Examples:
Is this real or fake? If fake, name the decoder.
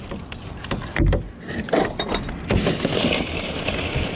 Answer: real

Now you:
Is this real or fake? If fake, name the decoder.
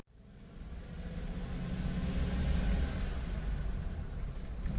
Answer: real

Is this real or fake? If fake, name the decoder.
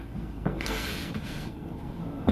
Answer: fake, codec, SNAC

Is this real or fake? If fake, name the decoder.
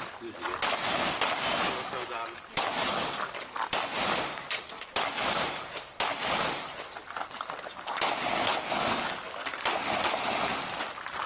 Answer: real